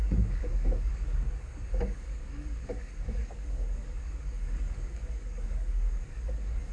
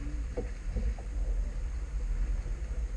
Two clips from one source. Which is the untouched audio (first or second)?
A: second